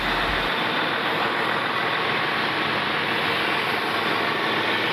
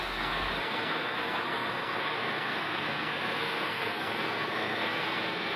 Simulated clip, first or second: second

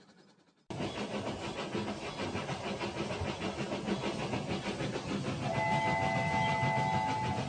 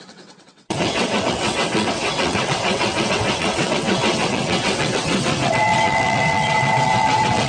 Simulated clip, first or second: second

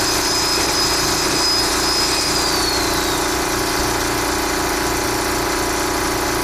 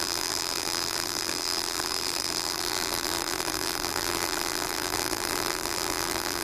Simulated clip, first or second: second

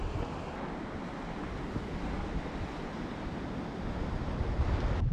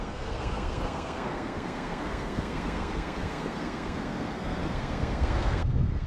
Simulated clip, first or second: second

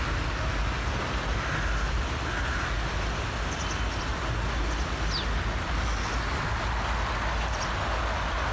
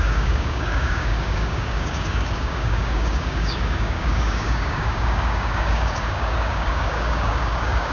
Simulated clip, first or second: second